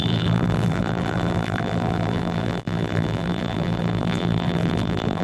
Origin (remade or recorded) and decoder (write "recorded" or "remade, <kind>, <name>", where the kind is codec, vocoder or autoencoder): remade, vocoder, BigVGAN v2